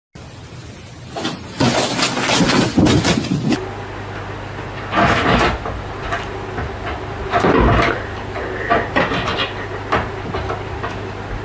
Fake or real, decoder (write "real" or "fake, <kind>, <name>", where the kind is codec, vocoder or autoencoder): real